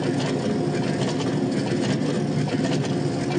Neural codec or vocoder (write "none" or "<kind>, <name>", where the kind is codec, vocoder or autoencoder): none